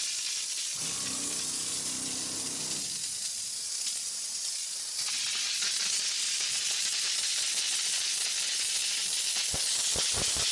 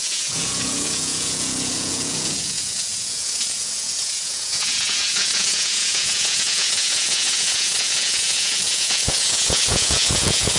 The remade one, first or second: second